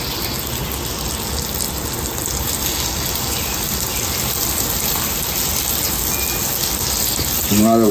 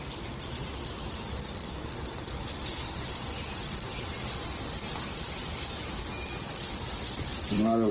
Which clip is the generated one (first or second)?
second